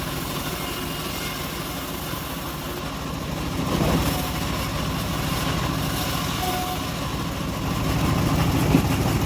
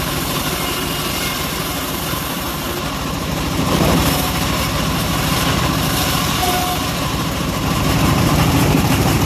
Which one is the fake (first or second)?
second